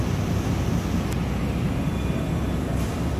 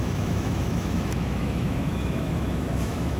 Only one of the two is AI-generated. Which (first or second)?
second